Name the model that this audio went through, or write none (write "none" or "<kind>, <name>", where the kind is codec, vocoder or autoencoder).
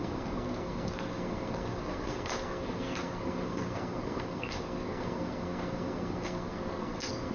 codec, SNAC